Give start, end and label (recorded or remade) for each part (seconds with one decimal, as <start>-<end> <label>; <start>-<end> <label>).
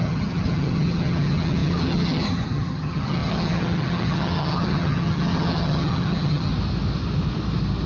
0.0-6.5 remade; 6.5-7.9 recorded